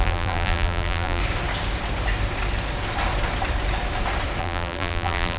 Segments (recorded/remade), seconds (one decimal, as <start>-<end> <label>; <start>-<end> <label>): 0.0-1.2 remade; 1.2-4.4 recorded; 4.4-5.4 remade